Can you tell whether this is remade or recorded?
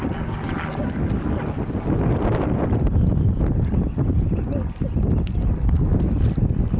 recorded